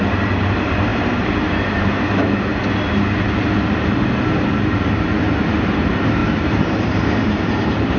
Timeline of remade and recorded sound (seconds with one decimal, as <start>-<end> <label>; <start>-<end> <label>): 0.0-2.5 remade; 2.5-5.2 recorded; 5.2-8.0 remade